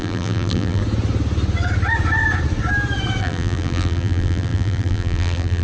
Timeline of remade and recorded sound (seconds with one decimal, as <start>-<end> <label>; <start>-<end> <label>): 0.0-0.8 remade; 0.8-3.2 recorded; 3.2-5.6 remade